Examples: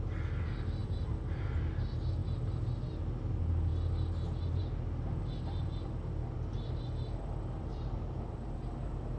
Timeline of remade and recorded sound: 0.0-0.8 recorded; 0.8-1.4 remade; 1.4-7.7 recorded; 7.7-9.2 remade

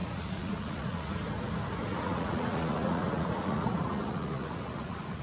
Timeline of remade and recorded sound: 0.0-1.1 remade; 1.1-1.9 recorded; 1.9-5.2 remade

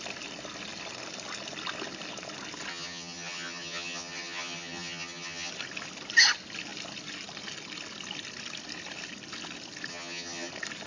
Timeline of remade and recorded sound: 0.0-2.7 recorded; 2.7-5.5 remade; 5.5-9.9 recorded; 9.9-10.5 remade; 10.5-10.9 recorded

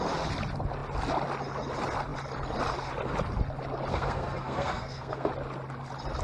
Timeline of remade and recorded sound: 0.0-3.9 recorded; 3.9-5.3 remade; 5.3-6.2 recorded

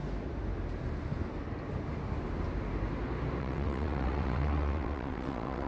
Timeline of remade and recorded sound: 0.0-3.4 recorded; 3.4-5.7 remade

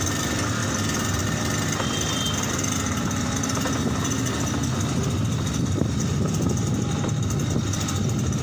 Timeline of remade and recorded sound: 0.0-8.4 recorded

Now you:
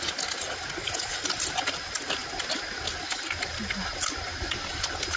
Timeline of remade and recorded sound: 0.0-5.2 recorded

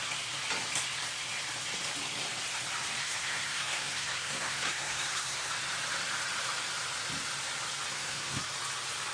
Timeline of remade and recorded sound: 0.0-3.0 recorded; 3.0-5.5 remade; 5.5-7.9 recorded; 7.9-8.5 remade; 8.5-9.1 recorded